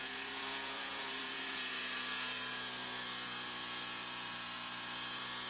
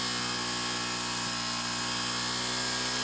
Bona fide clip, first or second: second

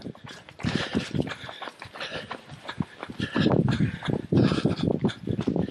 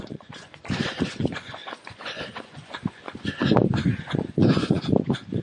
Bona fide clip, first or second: first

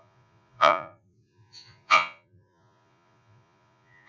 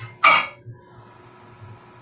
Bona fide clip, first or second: second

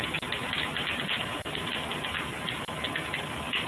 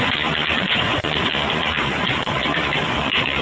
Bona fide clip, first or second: first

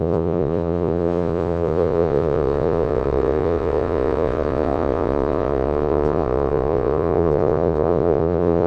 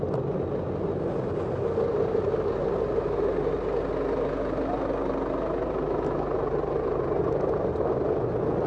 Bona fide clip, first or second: second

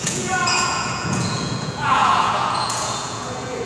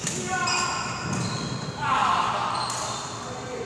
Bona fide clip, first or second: second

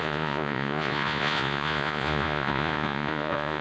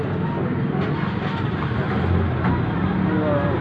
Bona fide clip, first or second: second